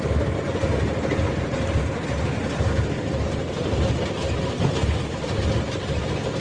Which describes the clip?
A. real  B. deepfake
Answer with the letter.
A